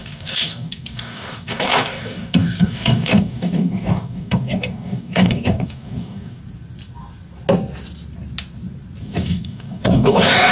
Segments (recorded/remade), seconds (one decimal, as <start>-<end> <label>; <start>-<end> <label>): 0.0-6.4 remade; 6.4-9.0 recorded; 9.0-10.5 remade